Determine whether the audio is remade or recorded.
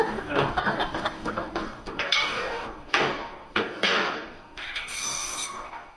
remade